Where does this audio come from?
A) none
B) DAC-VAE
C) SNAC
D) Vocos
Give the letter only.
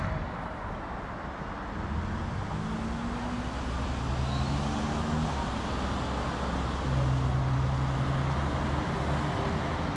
A